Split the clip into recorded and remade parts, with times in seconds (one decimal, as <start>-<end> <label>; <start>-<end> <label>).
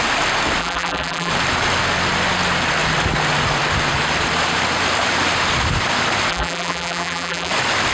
0.0-0.6 recorded; 0.6-1.3 remade; 1.3-6.3 recorded; 6.3-7.5 remade; 7.5-7.9 recorded